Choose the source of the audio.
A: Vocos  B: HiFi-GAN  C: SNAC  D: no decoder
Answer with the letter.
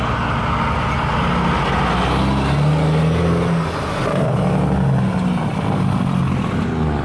D